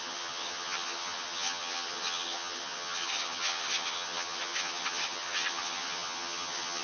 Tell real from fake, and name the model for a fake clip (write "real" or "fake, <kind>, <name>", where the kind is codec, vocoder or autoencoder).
fake, vocoder, HiFi-GAN